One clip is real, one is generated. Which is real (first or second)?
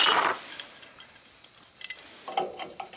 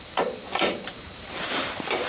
first